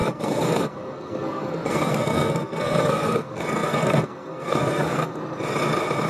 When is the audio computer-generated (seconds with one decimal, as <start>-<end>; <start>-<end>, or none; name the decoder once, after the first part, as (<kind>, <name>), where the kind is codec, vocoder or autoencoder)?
0.0-5.2 (codec, SNAC)